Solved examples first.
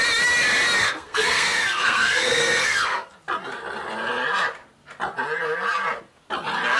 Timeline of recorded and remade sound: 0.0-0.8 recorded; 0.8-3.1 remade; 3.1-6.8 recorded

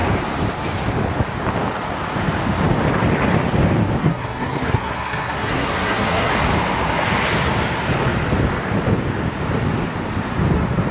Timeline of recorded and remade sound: 0.0-4.0 recorded; 4.0-6.3 remade; 6.3-10.9 recorded

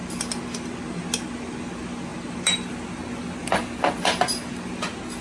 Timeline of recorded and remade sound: 0.0-5.2 recorded

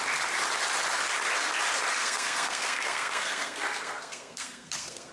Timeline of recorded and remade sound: 0.0-2.0 recorded; 2.0-5.1 remade

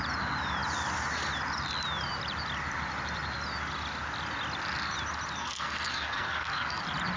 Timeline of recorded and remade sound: 0.0-5.4 recorded; 5.4-6.8 remade; 6.8-7.2 recorded

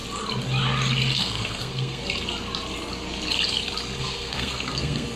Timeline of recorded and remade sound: 0.0-1.2 recorded; 1.2-2.0 remade; 2.0-4.0 recorded; 4.0-5.2 remade